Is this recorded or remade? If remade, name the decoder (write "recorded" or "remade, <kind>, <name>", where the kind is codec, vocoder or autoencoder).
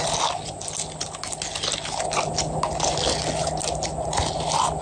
recorded